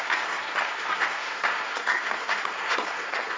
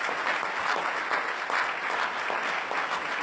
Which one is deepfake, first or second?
first